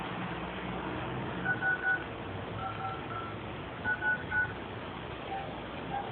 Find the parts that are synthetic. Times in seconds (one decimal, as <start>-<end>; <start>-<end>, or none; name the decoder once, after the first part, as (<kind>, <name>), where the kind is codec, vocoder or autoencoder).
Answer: 0.5-1.5 (codec, DAC); 2.6-6.1